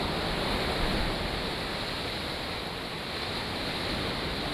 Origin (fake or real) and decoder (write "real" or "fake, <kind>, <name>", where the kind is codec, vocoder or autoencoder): real